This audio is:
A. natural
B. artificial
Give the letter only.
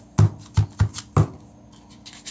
A